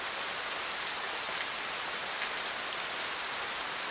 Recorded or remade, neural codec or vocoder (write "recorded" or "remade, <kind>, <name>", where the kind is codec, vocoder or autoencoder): recorded